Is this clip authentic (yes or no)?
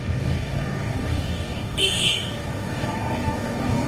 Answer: no